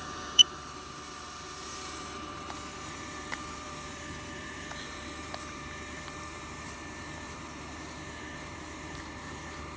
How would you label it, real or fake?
fake